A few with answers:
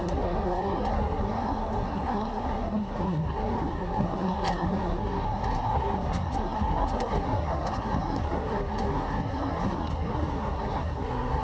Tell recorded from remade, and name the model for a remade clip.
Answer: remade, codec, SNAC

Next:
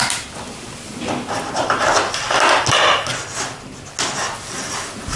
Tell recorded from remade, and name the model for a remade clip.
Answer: recorded